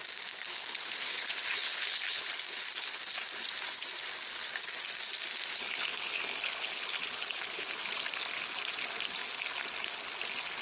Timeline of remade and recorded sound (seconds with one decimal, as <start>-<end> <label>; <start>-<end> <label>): 0.0-0.5 recorded; 0.5-2.4 remade; 2.4-5.5 recorded; 5.5-7.8 remade; 7.8-10.6 recorded